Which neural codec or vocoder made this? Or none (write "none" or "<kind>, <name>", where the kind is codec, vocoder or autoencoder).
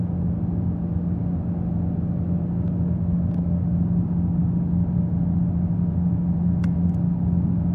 none